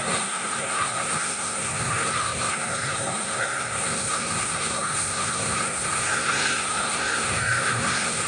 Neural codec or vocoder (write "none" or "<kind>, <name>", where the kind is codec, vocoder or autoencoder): codec, SNAC